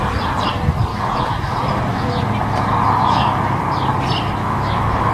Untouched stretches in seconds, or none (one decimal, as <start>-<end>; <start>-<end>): 0.0-0.9; 2.2-3.0; 3.6-4.4